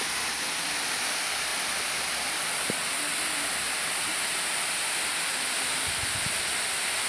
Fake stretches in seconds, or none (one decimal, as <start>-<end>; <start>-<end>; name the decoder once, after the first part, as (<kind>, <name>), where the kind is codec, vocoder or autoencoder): none